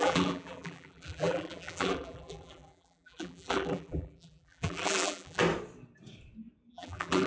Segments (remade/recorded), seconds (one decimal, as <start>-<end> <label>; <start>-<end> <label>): 0.0-5.4 remade; 5.4-6.7 recorded; 6.7-7.3 remade